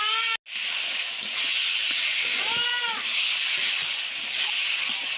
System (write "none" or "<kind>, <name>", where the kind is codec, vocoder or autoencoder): none